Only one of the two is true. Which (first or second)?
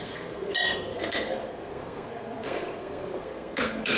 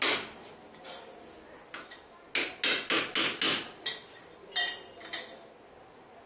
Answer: second